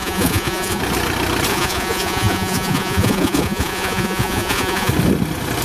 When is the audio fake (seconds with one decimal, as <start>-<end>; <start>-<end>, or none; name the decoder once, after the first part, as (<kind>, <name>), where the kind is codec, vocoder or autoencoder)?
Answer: 0.0-0.8 (vocoder, Vocos); 1.5-4.9